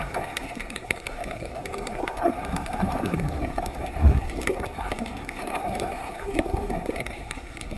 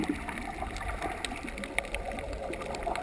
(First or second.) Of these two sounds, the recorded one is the second